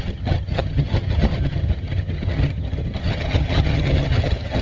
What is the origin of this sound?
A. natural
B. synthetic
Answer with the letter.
B